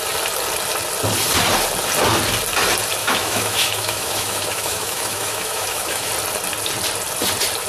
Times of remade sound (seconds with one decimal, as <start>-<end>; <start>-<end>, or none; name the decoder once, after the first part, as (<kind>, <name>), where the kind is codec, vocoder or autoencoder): 3.0-6.1 (autoencoder, DAC-VAE)